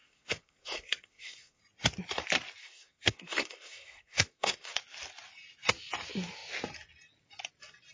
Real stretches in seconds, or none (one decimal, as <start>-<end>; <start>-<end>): 1.6-2.6; 4.7-7.9